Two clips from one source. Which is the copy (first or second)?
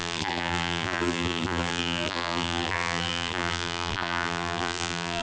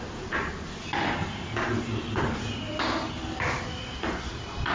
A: first